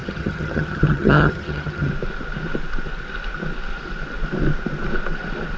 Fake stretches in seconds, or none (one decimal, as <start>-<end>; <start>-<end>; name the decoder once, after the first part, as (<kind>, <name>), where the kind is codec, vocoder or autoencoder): 0.0-1.9 (vocoder, HiFi-GAN)